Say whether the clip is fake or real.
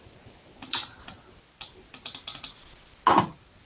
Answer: real